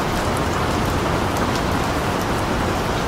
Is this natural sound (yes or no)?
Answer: yes